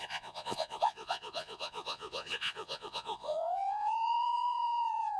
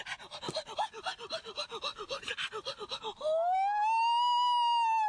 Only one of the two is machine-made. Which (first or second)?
first